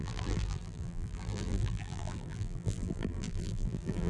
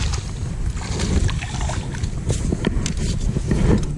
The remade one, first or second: first